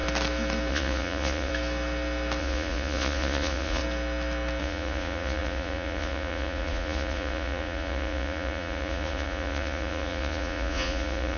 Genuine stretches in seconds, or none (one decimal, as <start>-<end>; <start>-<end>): 0.0-0.7; 1.5-2.4; 3.8-4.6